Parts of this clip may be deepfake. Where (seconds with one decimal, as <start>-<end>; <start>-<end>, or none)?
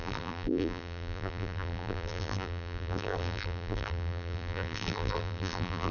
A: 0.0-5.9